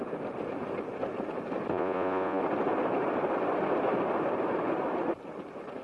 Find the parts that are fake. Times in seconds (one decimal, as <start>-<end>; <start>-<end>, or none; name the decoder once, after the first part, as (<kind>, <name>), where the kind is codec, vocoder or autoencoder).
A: 1.7-2.4 (vocoder, Vocos)